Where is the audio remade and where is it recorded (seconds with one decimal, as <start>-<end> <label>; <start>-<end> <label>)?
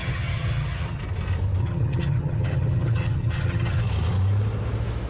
0.0-1.0 remade; 1.0-1.6 recorded; 1.6-3.8 remade; 3.8-5.1 recorded